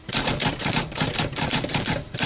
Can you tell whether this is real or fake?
fake